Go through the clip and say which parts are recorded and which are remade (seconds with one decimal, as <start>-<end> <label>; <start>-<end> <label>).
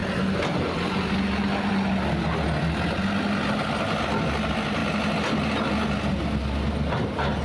0.0-7.4 recorded